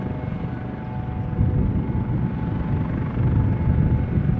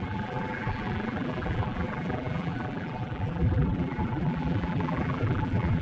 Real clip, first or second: first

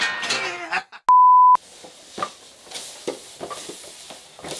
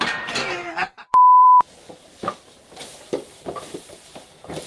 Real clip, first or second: first